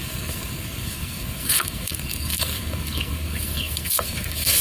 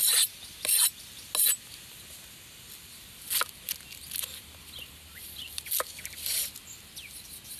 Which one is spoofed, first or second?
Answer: first